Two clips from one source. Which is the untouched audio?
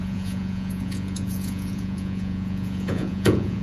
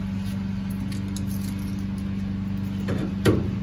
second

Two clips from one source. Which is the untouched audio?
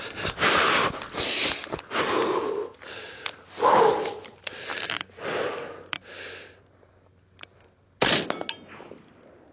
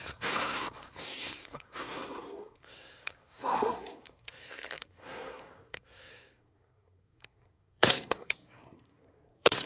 first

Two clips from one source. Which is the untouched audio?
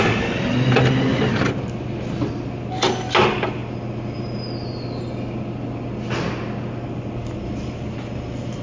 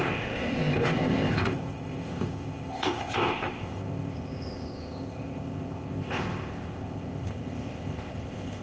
first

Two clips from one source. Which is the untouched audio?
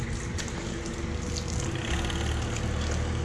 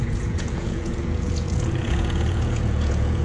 first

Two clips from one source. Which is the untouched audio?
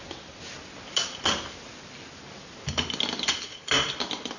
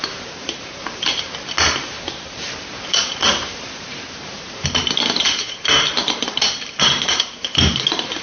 first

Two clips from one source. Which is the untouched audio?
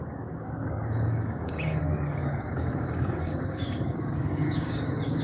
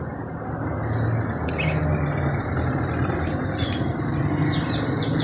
second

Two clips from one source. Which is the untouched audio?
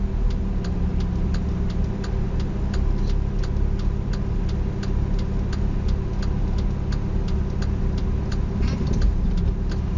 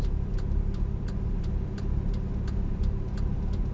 first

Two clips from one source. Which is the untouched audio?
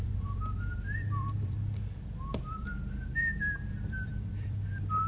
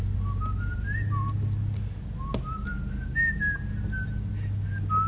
second